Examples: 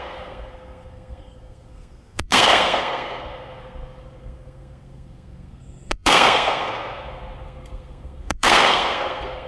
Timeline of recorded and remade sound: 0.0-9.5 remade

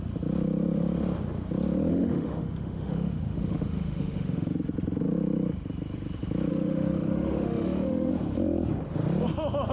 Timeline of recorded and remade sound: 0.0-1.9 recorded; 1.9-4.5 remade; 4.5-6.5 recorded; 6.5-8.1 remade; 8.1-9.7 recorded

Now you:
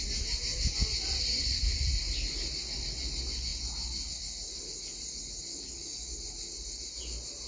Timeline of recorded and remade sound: 0.0-5.5 recorded; 5.5-6.1 remade; 6.1-7.5 recorded